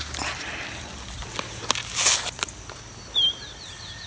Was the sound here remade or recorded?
recorded